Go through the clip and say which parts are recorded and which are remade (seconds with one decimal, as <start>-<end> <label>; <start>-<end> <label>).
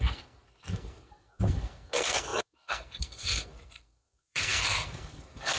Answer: 0.0-5.6 remade